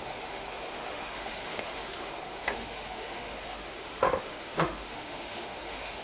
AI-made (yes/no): yes